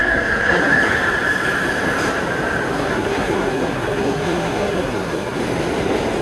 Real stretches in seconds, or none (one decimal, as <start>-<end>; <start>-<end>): 0.9-2.7; 5.4-6.2